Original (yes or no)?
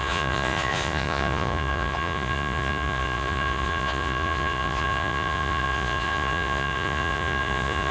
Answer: no